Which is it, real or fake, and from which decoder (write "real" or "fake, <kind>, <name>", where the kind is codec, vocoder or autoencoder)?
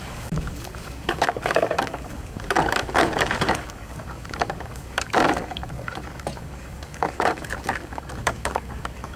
fake, codec, DAC